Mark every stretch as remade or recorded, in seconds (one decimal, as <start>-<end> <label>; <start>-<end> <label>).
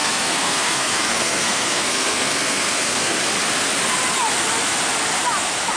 0.0-3.2 remade; 3.2-5.8 recorded